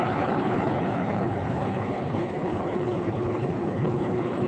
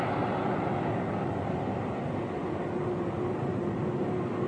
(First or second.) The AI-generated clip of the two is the first